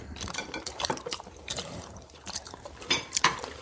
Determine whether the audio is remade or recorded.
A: remade